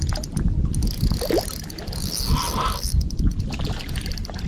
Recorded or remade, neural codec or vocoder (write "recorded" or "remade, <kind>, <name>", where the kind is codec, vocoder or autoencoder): recorded